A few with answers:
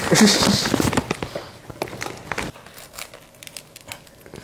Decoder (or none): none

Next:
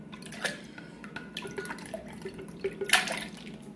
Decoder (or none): none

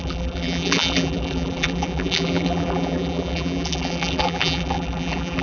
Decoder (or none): vocoder, BigVGAN v2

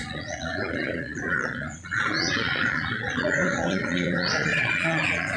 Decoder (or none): vocoder, Vocos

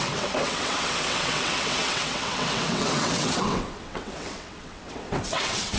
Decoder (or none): vocoder, WaveNeXt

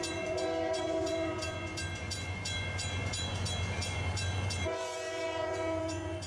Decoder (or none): vocoder, Vocos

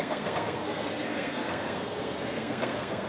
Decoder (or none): codec, SNAC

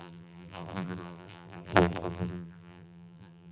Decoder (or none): vocoder, BigVGAN v2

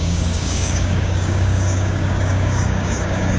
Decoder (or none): codec, DAC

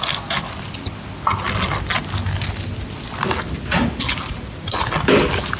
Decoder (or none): none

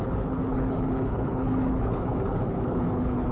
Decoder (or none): codec, HILCodec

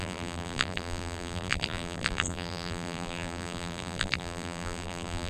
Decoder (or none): vocoder, BigVGAN v2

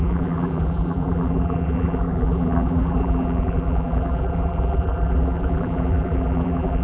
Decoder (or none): vocoder, BigVGAN v2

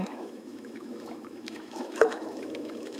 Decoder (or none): autoencoder, DAC-VAE